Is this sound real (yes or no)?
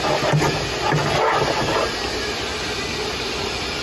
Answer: yes